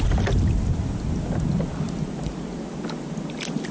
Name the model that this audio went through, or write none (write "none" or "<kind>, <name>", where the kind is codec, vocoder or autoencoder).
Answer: none